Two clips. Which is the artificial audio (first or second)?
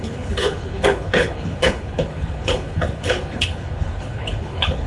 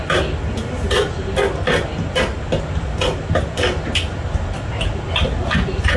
first